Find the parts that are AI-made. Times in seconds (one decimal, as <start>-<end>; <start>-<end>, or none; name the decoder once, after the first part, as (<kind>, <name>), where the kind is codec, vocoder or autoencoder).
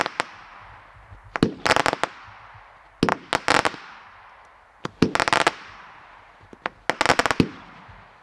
none